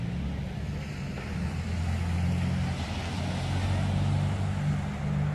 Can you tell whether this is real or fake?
real